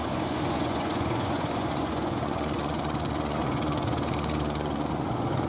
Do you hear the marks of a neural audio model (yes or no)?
yes